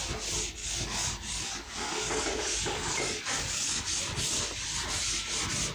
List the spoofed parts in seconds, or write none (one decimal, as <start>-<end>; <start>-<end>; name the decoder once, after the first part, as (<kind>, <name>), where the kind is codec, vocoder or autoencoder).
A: 0.6-4.0 (codec, DAC)